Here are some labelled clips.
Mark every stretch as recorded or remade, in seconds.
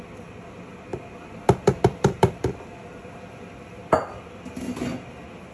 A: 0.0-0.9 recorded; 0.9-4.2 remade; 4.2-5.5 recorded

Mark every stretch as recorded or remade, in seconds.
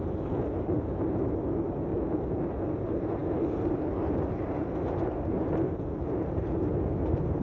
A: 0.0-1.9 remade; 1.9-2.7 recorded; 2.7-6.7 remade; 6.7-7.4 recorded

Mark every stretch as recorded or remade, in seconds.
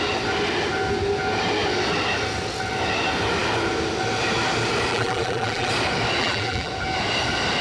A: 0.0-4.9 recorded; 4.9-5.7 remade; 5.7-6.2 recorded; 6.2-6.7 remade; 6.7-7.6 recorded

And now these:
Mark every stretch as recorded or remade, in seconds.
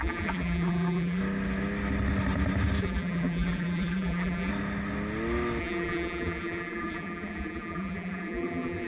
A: 0.0-1.2 remade; 1.2-2.8 recorded; 2.8-4.5 remade; 4.5-5.6 recorded; 5.6-8.9 remade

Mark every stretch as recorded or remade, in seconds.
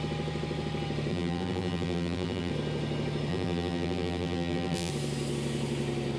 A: 0.0-1.1 recorded; 1.1-2.5 remade; 2.5-3.3 recorded; 3.3-4.9 remade; 4.9-6.2 recorded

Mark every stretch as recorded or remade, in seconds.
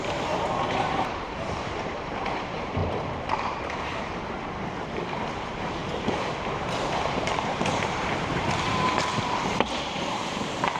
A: 0.0-10.8 remade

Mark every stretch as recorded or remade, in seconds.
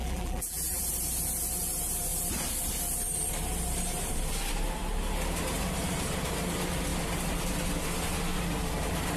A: 0.0-0.8 remade; 0.8-9.2 recorded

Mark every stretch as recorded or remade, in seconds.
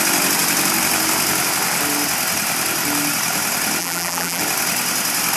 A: 0.0-3.8 recorded; 3.8-4.4 remade; 4.4-5.4 recorded